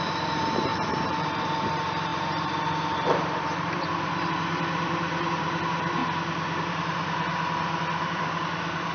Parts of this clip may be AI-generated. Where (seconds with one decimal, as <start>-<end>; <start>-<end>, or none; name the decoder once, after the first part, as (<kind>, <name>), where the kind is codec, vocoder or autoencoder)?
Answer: 0.0-6.0 (vocoder, BigVGAN v2); 6.7-7.3; 8.0-8.9